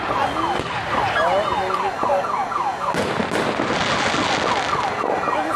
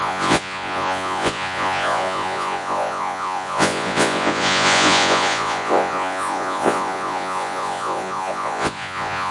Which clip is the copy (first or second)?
second